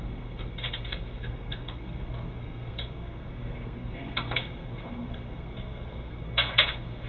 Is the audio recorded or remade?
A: remade